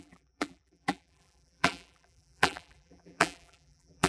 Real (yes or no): no